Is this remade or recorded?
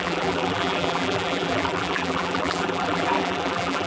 remade